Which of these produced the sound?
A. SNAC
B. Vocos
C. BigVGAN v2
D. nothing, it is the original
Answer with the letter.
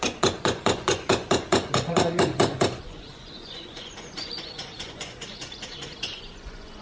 B